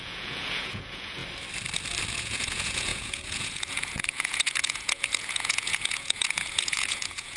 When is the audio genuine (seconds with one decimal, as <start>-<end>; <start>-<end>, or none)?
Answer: 1.2-2.1